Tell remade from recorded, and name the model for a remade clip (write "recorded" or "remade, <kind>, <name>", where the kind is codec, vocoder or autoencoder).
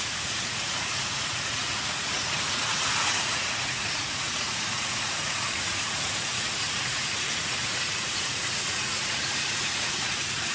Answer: remade, vocoder, Vocos